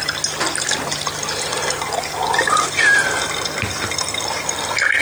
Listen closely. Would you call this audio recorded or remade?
recorded